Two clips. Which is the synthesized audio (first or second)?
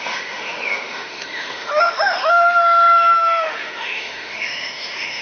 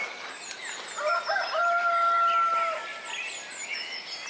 first